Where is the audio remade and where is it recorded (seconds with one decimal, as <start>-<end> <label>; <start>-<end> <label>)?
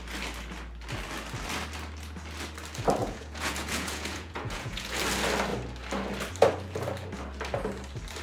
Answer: 0.0-3.0 recorded; 3.0-5.0 remade; 5.0-8.2 recorded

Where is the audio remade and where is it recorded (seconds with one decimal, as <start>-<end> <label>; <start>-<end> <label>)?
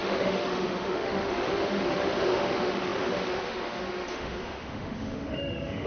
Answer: 0.0-5.9 remade